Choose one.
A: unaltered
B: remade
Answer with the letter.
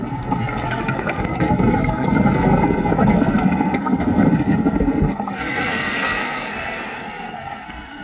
B